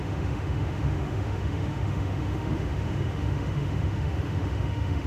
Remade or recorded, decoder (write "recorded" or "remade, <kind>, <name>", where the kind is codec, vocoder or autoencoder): remade, autoencoder, DAC-VAE